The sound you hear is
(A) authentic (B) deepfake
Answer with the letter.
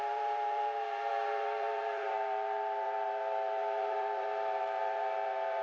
B